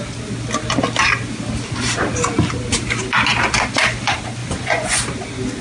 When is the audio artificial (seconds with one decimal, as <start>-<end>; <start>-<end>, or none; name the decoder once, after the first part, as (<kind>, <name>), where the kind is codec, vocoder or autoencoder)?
4.4-5.0 (vocoder, Vocos)